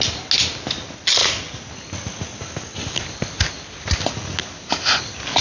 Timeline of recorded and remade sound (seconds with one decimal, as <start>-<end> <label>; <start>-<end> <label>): 0.0-5.4 recorded